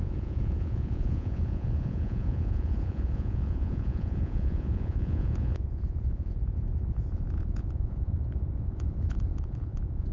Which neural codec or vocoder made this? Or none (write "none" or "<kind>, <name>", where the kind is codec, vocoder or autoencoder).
vocoder, Vocos